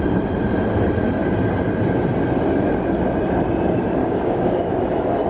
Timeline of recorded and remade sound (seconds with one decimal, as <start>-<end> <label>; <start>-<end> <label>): 0.0-4.0 recorded; 4.0-4.7 remade; 4.7-5.3 recorded